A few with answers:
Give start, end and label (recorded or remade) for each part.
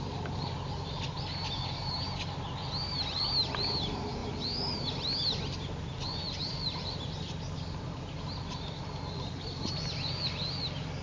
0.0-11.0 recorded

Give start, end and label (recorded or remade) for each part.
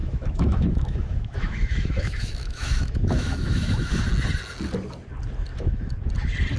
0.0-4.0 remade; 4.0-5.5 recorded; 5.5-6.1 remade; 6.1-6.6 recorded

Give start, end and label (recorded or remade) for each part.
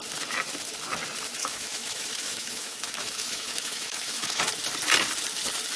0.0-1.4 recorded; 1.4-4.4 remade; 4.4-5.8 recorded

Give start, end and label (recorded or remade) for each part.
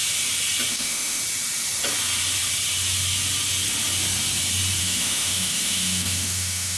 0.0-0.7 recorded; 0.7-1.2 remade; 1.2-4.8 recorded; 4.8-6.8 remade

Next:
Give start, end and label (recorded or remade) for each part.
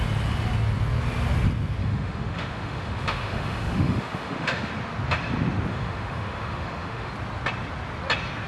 0.0-1.8 recorded; 1.8-4.7 remade; 4.7-5.7 recorded; 5.7-7.1 remade; 7.1-8.5 recorded